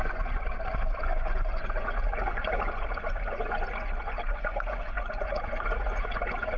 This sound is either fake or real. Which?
fake